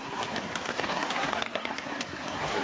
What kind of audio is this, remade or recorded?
remade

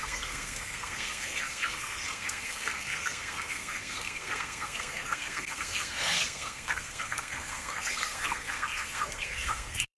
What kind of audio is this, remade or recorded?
remade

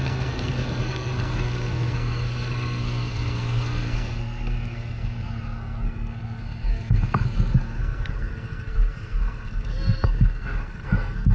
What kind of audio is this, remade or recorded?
remade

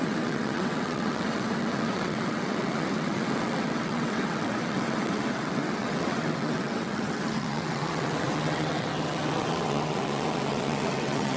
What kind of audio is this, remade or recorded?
remade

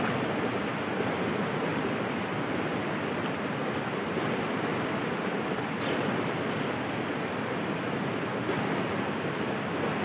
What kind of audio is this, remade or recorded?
recorded